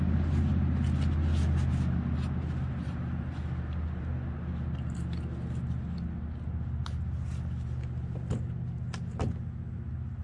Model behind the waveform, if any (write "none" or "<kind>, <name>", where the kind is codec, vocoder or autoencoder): none